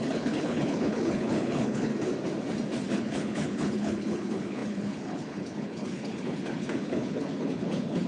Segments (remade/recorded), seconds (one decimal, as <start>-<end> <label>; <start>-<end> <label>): 0.0-1.9 remade; 1.9-2.8 recorded; 2.8-8.1 remade